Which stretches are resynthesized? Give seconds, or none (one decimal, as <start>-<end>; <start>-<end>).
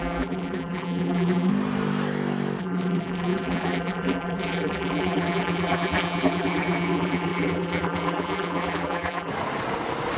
0.0-1.5; 2.6-9.3